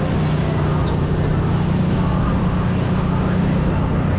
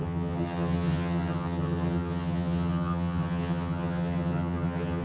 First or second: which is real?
first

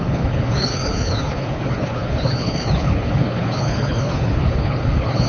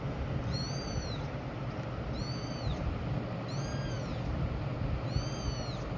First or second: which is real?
second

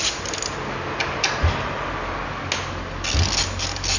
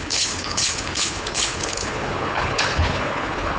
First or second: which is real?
first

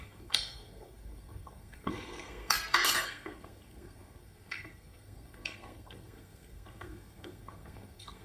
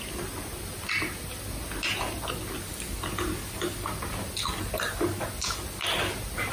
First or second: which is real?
second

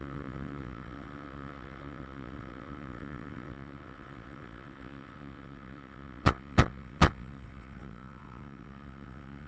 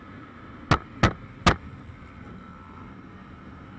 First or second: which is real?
second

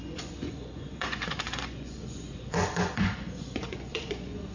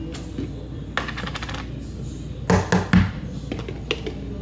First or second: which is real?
second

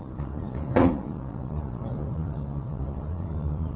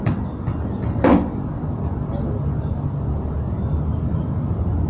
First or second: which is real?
second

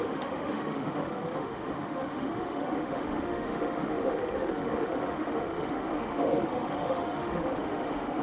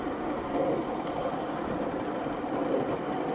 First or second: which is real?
second